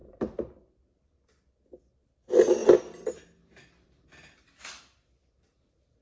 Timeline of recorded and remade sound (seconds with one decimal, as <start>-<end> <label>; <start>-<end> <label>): 0.0-6.0 recorded